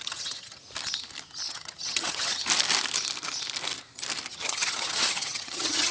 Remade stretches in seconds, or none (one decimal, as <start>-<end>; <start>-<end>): 0.0-0.6; 1.5-2.4; 4.3-5.9